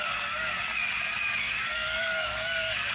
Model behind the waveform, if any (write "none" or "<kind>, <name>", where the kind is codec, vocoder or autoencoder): codec, DAC